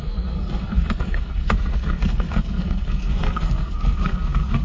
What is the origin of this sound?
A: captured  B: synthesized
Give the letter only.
B